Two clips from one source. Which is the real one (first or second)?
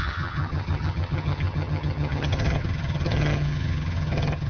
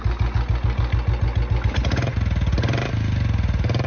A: second